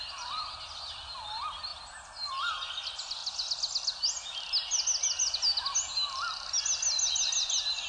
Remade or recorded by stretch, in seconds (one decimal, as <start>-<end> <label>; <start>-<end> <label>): 0.0-1.7 remade; 1.7-2.3 recorded; 2.3-3.2 remade; 3.2-7.9 recorded